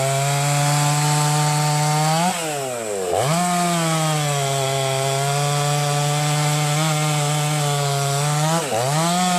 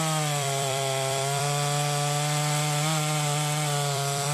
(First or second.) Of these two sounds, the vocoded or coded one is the second